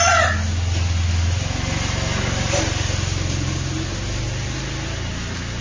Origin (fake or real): real